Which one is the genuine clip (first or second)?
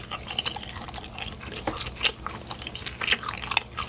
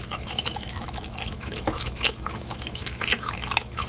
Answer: first